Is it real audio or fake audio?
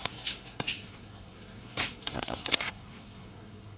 fake